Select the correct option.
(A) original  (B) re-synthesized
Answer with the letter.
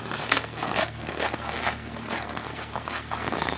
B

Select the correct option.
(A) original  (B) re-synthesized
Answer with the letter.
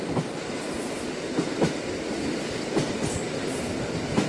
A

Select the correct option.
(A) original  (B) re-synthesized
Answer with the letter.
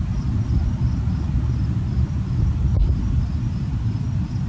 A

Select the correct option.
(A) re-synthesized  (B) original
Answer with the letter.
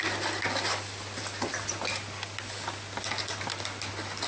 B